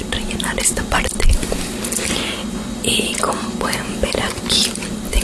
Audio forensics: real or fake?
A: real